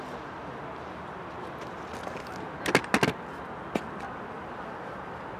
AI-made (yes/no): no